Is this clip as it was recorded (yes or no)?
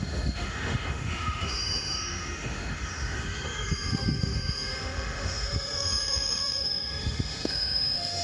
no